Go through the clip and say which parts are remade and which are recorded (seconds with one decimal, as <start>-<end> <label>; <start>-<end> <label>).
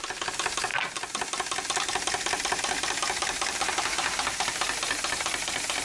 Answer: 0.0-5.8 recorded